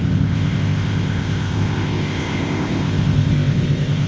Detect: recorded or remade remade